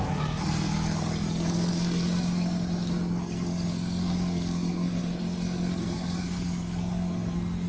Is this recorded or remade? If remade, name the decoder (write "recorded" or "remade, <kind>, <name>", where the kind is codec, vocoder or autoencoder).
remade, codec, SNAC